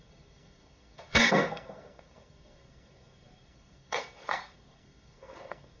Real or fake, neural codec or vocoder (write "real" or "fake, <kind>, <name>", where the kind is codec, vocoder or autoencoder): fake, codec, SNAC